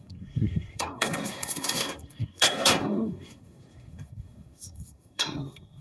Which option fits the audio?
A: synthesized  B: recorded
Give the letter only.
A